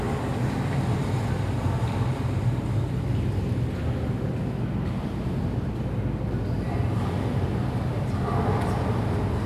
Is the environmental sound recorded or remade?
recorded